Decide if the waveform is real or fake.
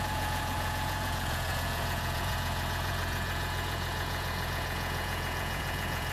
fake